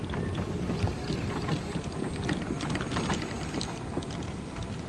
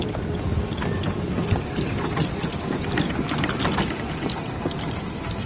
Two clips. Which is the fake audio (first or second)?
first